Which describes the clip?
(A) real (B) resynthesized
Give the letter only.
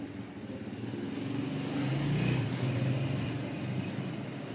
A